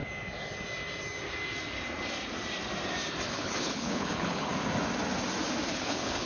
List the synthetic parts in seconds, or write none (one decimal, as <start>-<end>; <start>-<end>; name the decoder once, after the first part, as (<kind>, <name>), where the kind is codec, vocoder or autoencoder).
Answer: 3.3-4.5 (codec, HILCodec); 5.7-6.3